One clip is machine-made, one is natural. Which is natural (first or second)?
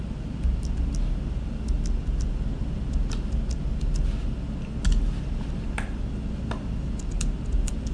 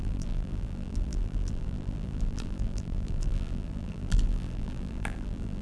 first